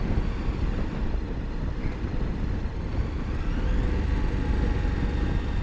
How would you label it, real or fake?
real